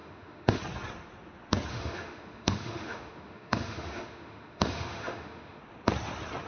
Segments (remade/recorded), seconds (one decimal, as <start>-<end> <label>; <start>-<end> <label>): 0.0-0.6 remade; 0.6-1.7 recorded; 1.7-5.6 remade; 5.6-6.5 recorded